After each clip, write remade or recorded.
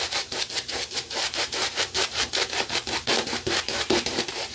remade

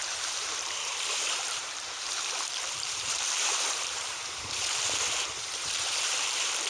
remade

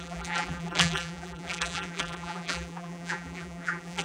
remade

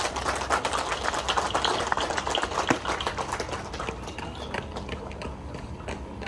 recorded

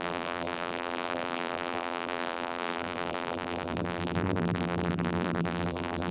remade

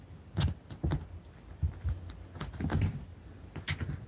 recorded